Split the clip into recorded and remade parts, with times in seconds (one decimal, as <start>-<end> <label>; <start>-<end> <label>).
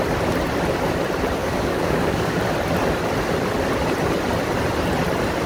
0.0-1.4 recorded; 1.4-2.4 remade; 2.4-5.5 recorded